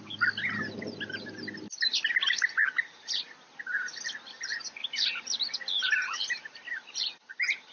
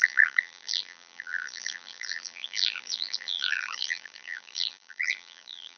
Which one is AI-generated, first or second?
second